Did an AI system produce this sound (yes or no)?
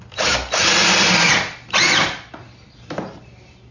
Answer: no